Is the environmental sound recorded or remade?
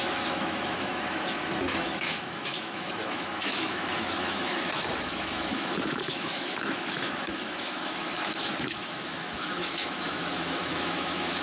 remade